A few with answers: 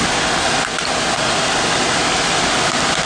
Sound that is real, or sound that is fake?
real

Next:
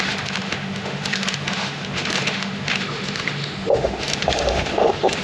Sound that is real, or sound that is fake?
fake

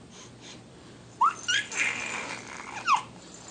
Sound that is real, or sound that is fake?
real